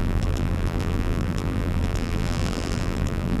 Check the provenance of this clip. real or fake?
fake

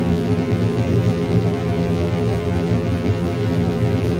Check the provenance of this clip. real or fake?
fake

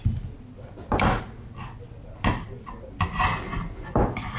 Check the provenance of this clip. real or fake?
real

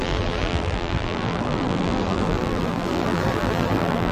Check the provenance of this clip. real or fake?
fake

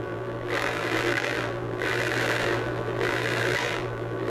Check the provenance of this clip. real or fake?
fake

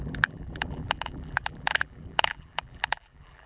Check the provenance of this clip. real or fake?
fake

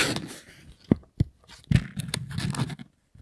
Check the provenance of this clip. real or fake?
real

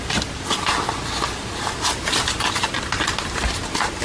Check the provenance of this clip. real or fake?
real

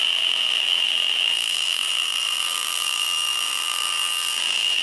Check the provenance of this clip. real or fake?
fake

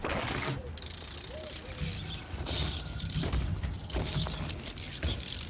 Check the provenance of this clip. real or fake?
real